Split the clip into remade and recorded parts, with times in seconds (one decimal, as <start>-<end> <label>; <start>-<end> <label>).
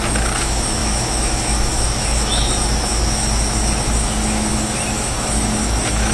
0.0-6.1 remade